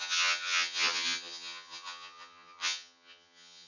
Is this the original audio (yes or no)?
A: no